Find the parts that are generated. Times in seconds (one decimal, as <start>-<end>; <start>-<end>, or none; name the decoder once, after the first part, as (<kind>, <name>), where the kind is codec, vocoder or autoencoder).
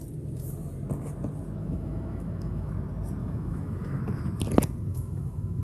1.6-2.7 (autoencoder, DAC-VAE); 3.2-4.0; 4.9-5.6